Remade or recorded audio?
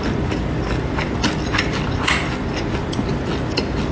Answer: recorded